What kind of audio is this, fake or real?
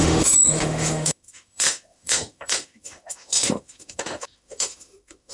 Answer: fake